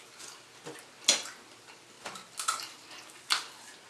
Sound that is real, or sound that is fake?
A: real